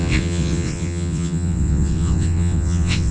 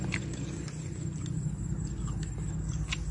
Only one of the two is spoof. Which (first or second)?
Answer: first